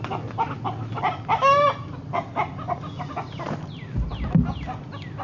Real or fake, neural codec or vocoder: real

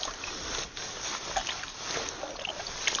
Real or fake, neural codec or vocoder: real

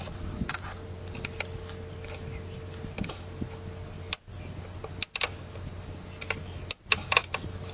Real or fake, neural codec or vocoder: real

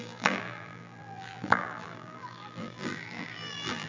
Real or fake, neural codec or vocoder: fake, vocoder, BigVGAN v2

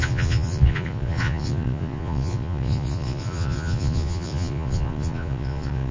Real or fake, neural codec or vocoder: fake, vocoder, Vocos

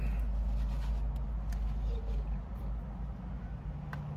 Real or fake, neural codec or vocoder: real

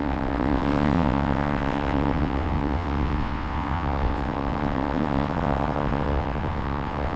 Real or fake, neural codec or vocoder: fake, vocoder, WaveNeXt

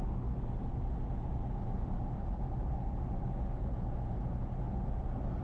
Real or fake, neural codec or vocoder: real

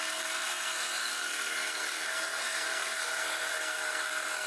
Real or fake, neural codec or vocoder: fake, codec, SNAC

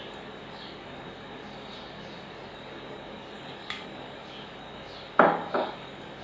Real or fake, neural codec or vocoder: fake, codec, DAC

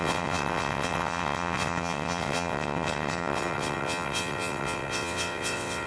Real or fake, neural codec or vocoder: fake, vocoder, WaveNeXt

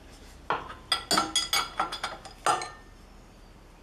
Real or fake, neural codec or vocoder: real